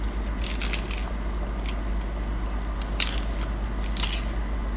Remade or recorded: recorded